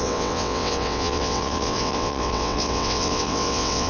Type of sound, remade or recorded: remade